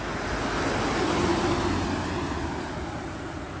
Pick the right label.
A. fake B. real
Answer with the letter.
B